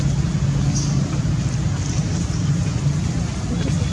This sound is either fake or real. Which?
real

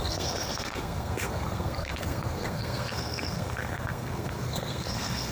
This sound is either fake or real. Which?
fake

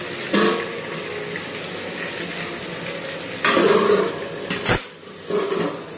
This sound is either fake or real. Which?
real